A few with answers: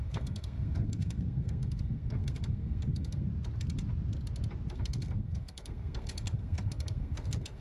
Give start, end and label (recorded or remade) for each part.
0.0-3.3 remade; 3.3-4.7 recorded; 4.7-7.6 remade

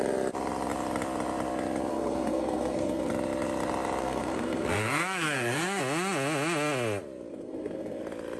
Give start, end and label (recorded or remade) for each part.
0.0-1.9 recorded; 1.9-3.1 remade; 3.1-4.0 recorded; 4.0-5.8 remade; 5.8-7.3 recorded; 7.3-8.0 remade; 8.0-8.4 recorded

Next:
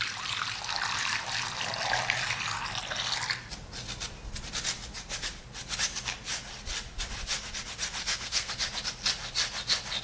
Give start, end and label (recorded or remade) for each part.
0.0-8.0 recorded; 8.0-8.5 remade; 8.5-10.0 recorded

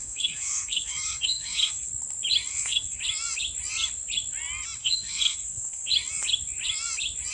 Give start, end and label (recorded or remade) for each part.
0.0-1.9 remade; 1.9-2.5 recorded; 2.5-3.0 remade; 3.0-4.8 recorded; 4.8-5.9 remade; 5.9-7.3 recorded

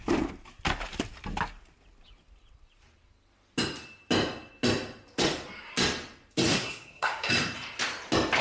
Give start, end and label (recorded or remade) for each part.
0.0-6.5 recorded; 6.5-7.3 remade; 7.3-8.4 recorded